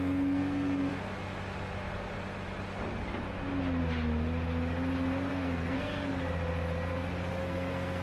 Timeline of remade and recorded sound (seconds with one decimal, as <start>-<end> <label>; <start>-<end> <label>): 0.0-0.9 remade; 0.9-5.3 recorded; 5.3-6.1 remade; 6.1-7.4 recorded; 7.4-8.0 remade